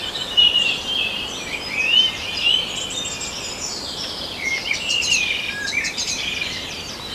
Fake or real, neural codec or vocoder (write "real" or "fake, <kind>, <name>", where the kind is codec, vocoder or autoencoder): fake, vocoder, BigVGAN v2